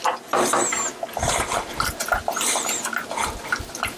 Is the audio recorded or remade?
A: recorded